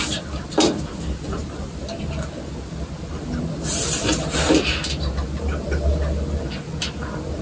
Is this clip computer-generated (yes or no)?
no